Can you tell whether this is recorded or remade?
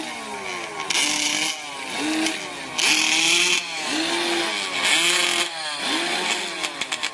recorded